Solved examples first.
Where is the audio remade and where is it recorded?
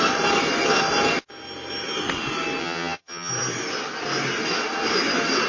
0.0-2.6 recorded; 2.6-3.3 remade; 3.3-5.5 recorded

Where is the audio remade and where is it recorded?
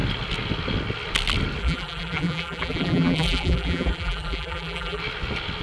0.0-1.6 recorded; 1.6-5.0 remade; 5.0-5.6 recorded